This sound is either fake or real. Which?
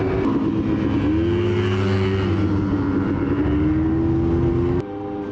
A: real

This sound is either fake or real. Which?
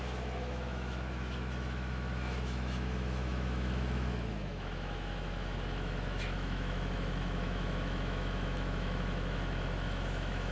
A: fake